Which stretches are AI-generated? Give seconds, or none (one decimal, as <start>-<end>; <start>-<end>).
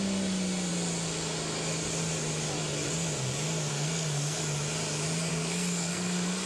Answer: 3.7-4.4; 5.3-6.5